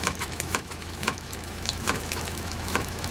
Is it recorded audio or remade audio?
remade